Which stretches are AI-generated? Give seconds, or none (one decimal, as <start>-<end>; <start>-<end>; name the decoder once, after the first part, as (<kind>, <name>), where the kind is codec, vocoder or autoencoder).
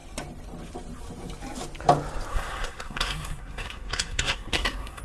2.3-5.0 (codec, SNAC)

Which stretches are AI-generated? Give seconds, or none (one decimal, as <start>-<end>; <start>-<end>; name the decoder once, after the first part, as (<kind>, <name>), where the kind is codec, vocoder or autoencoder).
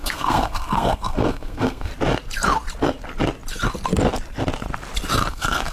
0.0-1.9 (codec, SNAC); 5.3-5.7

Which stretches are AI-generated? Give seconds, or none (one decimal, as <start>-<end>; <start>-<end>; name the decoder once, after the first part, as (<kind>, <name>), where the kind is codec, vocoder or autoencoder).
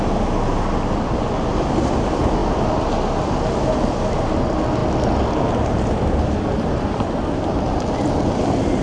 none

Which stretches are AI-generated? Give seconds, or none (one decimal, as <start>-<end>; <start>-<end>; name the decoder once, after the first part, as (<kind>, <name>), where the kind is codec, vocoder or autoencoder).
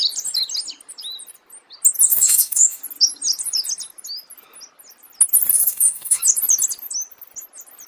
2.1-2.8 (autoencoder, DAC-VAE); 5.5-6.2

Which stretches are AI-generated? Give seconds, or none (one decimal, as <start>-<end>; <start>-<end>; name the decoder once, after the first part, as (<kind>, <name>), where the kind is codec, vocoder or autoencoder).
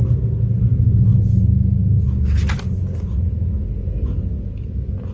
none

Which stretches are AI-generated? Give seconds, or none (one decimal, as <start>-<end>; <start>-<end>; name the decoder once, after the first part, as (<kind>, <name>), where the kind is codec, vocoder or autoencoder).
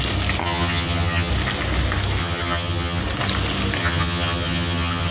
0.4-1.3 (vocoder, HiFi-GAN); 2.2-3.0; 3.8-5.1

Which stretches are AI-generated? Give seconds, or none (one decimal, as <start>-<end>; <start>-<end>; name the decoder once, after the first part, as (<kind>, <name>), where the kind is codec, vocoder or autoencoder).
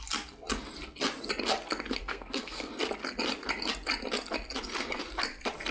2.0-2.7 (codec, SNAC)